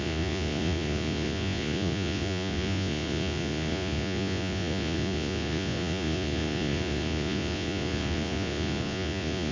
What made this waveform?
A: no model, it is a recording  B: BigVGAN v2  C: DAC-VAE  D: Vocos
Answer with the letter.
D